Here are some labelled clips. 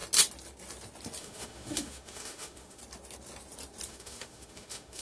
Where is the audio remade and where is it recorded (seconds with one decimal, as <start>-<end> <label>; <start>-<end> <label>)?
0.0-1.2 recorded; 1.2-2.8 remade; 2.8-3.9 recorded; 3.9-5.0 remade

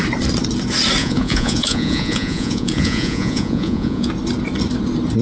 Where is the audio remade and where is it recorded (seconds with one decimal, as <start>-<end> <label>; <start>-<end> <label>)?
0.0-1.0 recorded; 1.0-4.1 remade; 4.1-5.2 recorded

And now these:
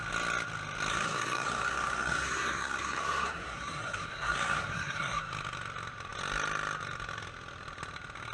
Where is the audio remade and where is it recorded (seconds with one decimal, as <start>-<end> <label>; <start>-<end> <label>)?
0.0-0.9 recorded; 0.9-5.2 remade; 5.2-8.3 recorded